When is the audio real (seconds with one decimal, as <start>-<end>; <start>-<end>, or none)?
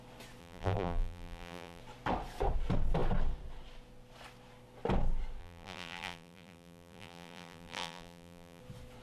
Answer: 0.0-0.4; 1.8-5.4; 8.6-9.0